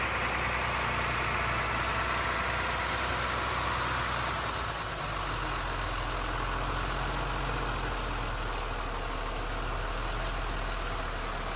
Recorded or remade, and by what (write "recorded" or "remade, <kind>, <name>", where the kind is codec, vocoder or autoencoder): recorded